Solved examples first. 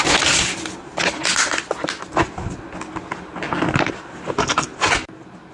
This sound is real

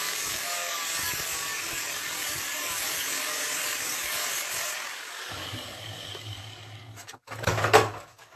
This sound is fake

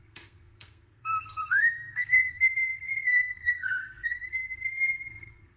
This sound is fake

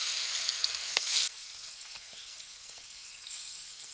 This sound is fake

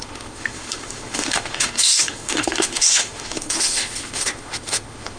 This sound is fake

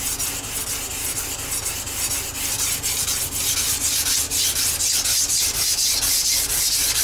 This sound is real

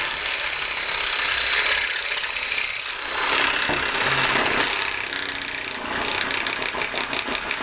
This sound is real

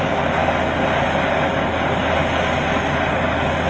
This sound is real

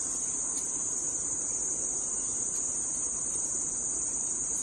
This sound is fake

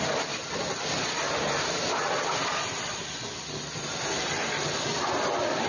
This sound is real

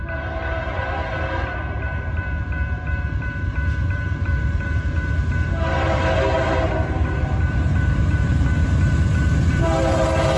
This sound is fake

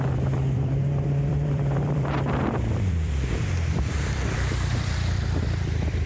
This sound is fake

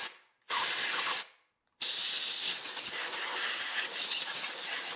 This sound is real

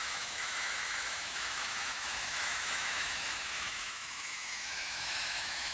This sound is fake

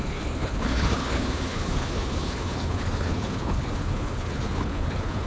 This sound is fake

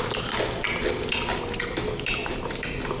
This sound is real